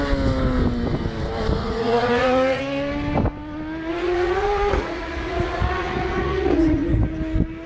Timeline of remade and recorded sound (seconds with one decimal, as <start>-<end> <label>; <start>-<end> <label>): 0.0-1.6 recorded; 1.6-2.6 remade; 2.6-3.9 recorded; 3.9-7.0 remade; 7.0-7.7 recorded